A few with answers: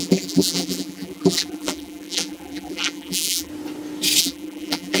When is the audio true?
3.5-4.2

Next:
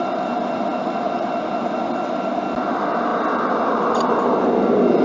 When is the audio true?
0.0-5.0

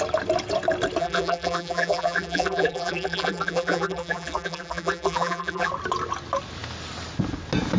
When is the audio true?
0.0-1.0; 5.7-7.8

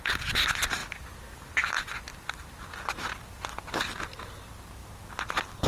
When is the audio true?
0.0-5.7

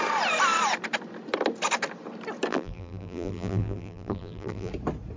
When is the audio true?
0.0-2.5; 4.7-5.2